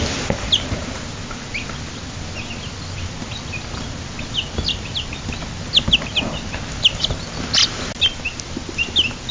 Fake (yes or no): no